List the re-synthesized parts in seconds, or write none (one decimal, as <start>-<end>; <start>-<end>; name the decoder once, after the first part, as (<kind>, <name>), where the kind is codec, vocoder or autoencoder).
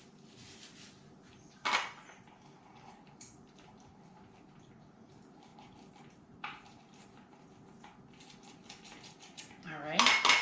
none